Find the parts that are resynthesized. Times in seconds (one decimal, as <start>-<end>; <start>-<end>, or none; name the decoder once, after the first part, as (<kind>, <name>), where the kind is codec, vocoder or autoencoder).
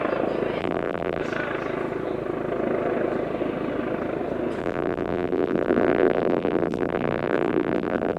0.6-1.2 (vocoder, BigVGAN v2); 4.6-8.2